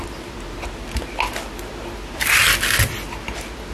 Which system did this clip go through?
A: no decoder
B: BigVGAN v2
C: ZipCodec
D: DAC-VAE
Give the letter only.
A